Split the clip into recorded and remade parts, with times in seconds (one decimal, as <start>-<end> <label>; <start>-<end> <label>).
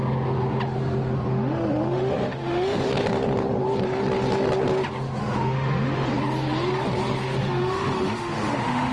0.0-1.3 recorded; 1.3-2.9 remade; 2.9-5.2 recorded; 5.2-6.1 remade; 6.1-7.4 recorded; 7.4-8.9 remade